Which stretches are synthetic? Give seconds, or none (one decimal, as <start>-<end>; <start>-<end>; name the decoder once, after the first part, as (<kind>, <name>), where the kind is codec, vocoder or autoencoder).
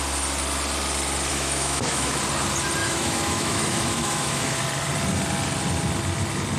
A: 1.3-2.2 (autoencoder, DAC-VAE); 2.8-4.6